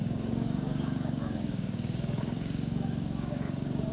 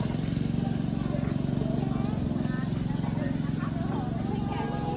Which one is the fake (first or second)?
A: first